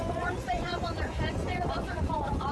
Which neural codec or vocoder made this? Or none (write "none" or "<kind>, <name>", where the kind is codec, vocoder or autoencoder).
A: vocoder, Vocos